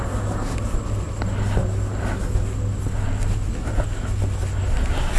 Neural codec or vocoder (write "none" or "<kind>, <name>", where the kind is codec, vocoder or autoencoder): none